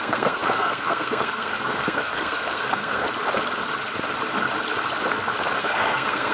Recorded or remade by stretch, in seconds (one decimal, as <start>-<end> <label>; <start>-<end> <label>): 0.0-3.0 remade; 3.0-5.6 recorded; 5.6-6.3 remade